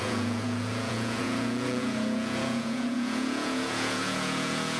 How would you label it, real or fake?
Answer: fake